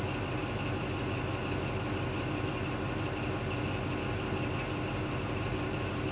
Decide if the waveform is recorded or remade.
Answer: recorded